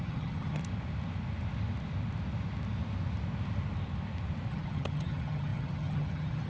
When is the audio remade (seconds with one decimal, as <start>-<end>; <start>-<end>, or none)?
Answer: 0.0-0.6; 4.5-6.5